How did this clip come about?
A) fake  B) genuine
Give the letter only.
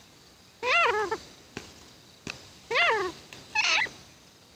B